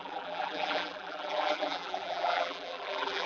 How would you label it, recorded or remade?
remade